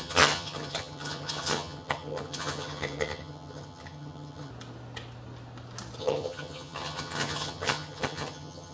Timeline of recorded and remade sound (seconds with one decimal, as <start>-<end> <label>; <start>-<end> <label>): 0.0-4.5 remade; 4.5-6.0 recorded; 6.0-8.7 remade